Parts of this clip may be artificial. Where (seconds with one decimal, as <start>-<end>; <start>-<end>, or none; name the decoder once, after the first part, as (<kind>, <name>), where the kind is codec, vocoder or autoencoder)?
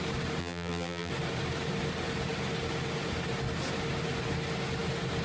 0.4-1.1 (vocoder, BigVGAN v2)